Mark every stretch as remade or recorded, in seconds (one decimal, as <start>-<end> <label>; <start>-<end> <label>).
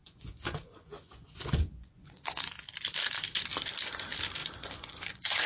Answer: 0.0-2.5 remade; 2.5-4.4 recorded; 4.4-5.5 remade